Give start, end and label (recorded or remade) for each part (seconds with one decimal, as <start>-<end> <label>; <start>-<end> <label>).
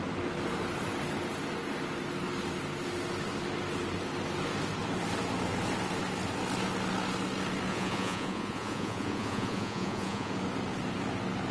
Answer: 0.0-7.7 recorded; 7.7-10.3 remade; 10.3-11.5 recorded